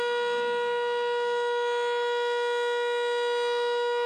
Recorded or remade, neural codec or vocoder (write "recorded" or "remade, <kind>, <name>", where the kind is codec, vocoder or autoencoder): remade, autoencoder, DAC-VAE